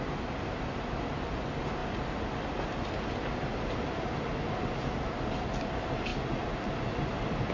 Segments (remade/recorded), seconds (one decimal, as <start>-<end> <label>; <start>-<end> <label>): 0.0-7.5 recorded